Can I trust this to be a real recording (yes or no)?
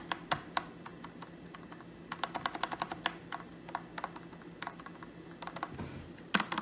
yes